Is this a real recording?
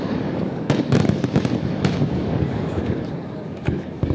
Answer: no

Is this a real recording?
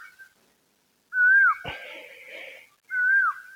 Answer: yes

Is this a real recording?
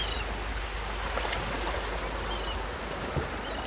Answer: yes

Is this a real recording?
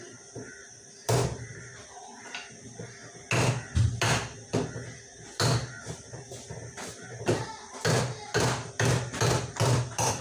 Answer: yes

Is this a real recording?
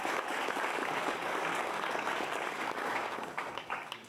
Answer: no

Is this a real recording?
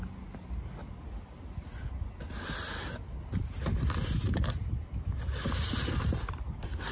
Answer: yes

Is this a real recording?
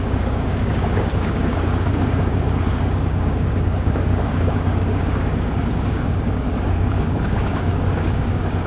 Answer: no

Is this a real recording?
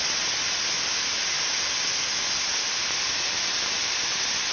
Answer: yes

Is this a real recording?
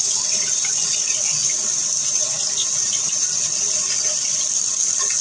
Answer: yes